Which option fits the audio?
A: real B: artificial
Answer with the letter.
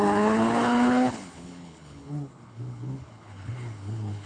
B